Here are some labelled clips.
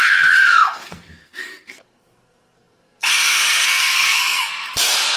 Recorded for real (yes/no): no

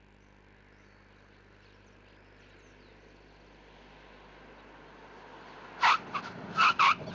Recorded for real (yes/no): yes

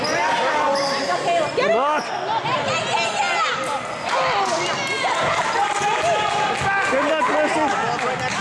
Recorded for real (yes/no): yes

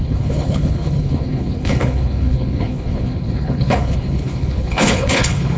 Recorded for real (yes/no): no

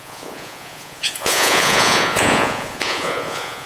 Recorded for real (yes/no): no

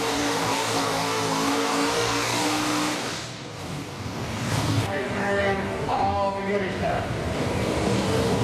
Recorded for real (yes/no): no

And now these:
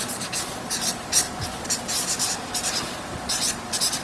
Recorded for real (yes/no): yes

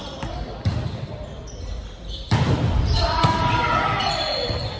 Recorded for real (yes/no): yes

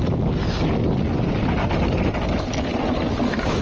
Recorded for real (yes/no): yes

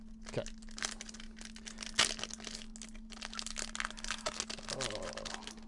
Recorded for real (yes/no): yes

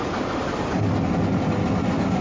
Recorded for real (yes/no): yes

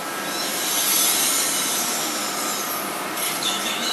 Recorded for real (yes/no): yes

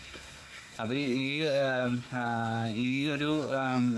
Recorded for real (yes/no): no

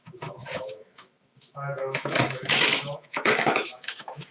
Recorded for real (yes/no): no